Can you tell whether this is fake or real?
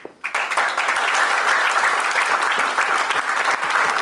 real